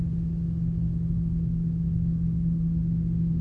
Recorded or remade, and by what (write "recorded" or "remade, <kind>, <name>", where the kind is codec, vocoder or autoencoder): recorded